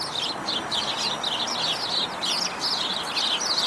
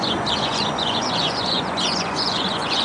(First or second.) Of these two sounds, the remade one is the second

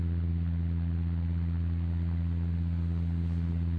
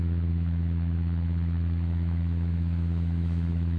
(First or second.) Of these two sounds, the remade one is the second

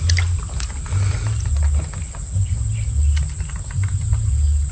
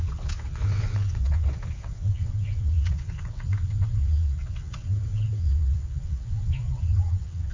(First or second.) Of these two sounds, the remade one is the second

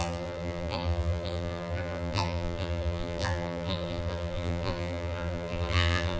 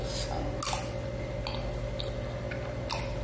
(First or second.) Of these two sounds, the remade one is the first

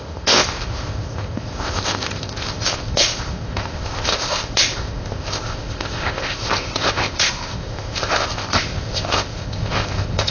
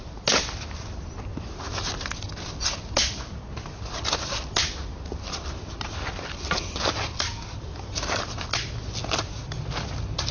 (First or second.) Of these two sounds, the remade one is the first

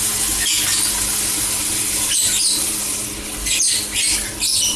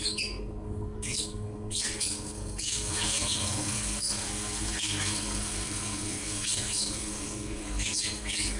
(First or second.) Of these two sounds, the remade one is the second